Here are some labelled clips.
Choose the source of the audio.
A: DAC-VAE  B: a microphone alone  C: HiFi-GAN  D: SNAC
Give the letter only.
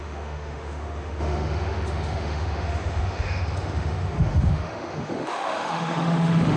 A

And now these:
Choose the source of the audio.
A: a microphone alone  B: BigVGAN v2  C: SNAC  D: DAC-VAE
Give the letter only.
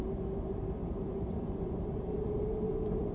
B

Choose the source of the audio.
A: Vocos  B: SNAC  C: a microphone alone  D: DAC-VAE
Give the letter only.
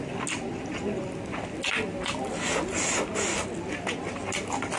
C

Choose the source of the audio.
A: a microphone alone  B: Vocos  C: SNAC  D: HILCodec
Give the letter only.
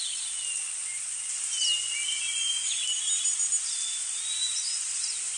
A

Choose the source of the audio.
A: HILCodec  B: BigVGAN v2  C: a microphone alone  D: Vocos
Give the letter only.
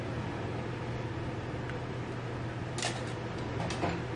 C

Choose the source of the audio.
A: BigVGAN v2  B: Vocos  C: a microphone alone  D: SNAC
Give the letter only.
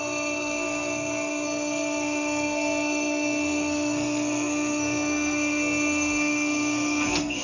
D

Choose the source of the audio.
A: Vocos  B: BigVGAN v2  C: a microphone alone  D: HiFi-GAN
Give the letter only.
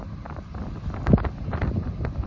C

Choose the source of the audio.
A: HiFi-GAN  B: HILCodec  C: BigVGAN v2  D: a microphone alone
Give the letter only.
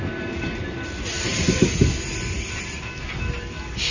D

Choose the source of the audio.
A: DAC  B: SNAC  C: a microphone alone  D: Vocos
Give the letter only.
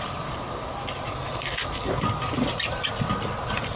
C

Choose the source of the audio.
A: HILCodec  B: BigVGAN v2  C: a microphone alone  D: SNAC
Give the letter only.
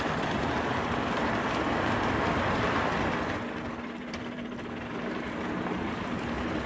B